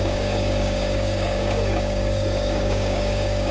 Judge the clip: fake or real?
fake